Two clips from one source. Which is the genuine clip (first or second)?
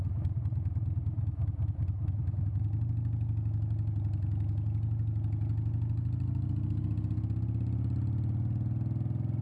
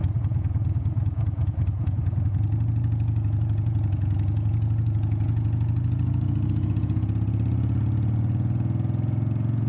first